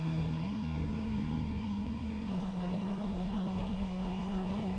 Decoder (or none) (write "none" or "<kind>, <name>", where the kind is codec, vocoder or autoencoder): codec, SNAC